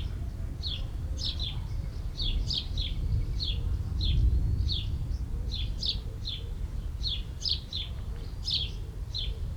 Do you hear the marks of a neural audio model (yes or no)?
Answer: no